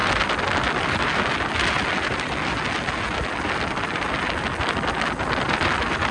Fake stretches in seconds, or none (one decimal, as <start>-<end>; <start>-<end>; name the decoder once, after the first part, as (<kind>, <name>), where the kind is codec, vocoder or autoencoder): none